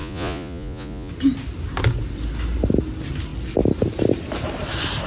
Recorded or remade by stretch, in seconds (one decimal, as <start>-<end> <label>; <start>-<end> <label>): 0.0-1.1 remade; 1.1-5.1 recorded